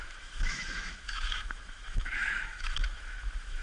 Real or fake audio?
fake